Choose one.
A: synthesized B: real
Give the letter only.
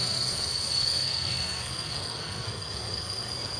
A